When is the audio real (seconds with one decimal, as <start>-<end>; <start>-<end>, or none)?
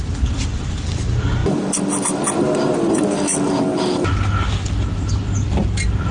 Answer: 0.0-6.1